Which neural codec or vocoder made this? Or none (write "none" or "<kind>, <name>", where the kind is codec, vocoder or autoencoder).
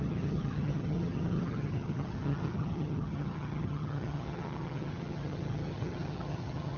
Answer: vocoder, HiFi-GAN